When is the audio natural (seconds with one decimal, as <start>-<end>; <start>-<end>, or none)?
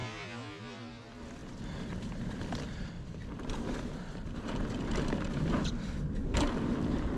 0.0-0.6